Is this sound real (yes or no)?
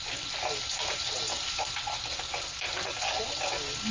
yes